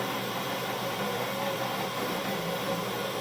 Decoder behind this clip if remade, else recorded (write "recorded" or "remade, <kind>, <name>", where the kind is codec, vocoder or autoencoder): remade, vocoder, BigVGAN v2